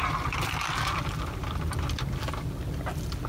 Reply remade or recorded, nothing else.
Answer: recorded